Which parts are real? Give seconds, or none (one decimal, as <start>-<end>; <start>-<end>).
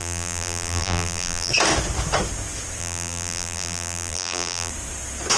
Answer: 1.5-2.8; 4.7-5.4